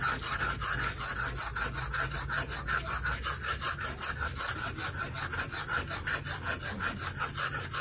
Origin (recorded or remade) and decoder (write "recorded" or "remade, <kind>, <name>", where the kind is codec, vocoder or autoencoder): recorded